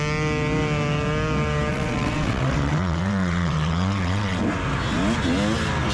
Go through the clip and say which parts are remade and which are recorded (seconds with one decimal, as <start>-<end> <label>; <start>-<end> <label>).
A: 0.0-1.7 recorded; 1.7-4.4 remade; 4.4-5.9 recorded